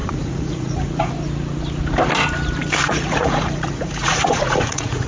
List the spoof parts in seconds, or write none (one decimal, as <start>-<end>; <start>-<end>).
0.0-1.1; 2.8-5.1